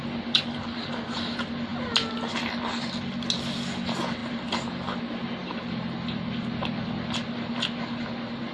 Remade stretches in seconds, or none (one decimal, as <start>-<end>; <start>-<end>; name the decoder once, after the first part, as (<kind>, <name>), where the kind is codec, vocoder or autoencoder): none